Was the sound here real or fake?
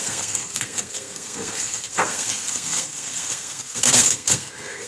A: fake